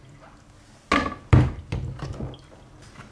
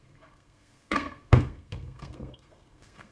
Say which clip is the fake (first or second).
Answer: second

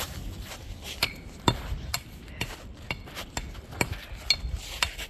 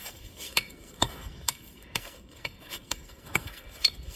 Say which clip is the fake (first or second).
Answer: second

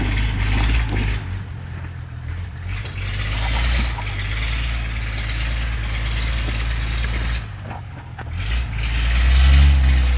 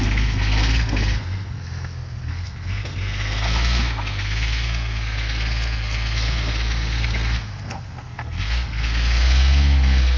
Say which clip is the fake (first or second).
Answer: second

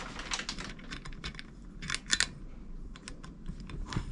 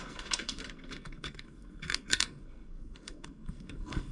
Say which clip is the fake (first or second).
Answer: second